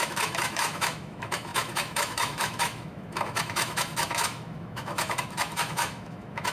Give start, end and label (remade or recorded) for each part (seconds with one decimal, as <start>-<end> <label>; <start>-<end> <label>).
0.0-6.5 remade